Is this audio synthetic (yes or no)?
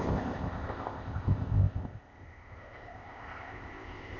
yes